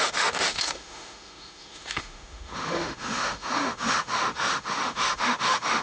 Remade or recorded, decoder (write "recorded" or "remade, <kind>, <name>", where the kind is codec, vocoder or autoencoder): remade, autoencoder, DAC-VAE